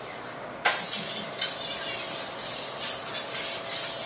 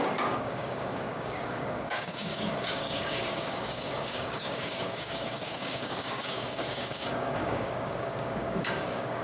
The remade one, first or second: second